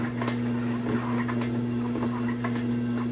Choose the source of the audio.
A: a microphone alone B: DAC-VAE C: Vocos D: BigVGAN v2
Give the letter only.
A